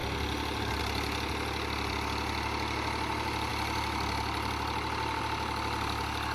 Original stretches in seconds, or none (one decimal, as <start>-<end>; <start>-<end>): 0.0-6.3